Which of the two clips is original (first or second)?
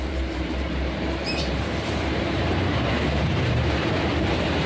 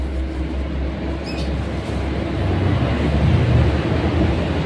second